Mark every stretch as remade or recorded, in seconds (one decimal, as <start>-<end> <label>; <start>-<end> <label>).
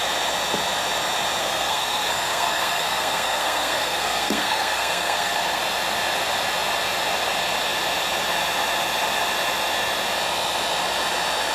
0.0-1.4 recorded; 1.4-5.6 remade; 5.6-11.5 recorded